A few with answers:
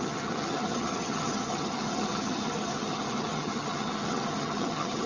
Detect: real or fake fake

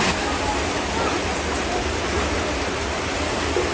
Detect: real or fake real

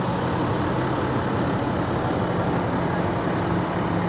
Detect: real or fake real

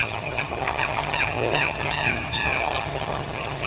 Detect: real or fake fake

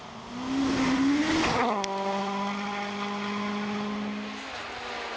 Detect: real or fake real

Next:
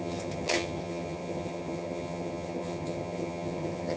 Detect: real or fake fake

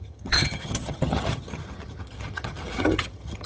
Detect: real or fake fake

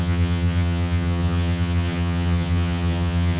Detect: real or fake fake